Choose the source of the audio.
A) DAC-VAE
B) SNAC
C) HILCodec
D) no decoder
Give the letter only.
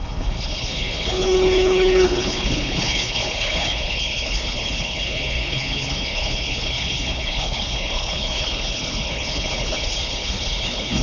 C